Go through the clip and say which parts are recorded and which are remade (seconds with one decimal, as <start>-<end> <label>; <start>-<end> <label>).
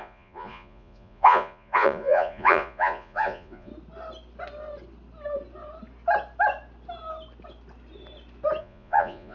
0.0-3.7 remade; 3.7-8.6 recorded; 8.6-9.3 remade